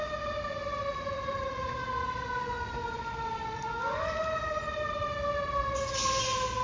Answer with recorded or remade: recorded